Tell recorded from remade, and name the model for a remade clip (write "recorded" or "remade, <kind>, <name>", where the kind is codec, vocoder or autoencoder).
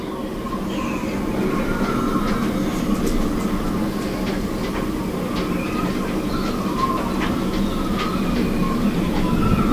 recorded